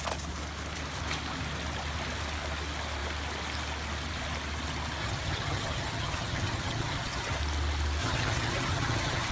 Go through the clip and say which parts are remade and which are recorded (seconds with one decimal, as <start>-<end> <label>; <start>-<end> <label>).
0.0-5.0 recorded; 5.0-7.4 remade; 7.4-8.0 recorded; 8.0-9.3 remade